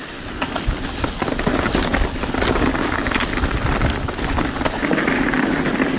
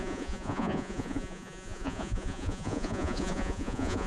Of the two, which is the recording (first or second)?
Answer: first